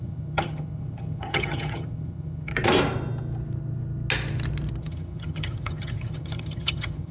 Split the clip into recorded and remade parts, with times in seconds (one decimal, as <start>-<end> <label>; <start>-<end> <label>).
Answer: 0.0-2.5 remade; 2.5-4.8 recorded; 4.8-7.1 remade